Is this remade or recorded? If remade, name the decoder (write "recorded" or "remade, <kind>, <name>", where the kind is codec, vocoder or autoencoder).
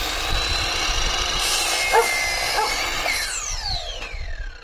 recorded